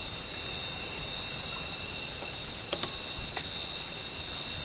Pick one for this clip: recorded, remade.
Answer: recorded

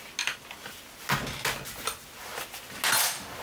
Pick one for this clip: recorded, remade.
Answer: recorded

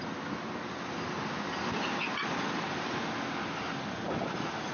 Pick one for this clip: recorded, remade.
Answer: recorded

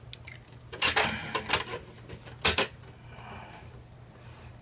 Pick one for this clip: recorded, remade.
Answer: recorded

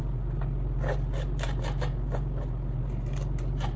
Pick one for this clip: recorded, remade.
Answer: recorded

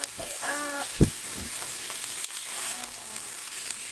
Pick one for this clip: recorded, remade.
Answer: remade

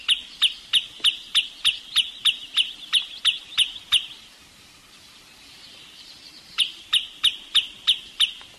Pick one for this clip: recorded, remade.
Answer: recorded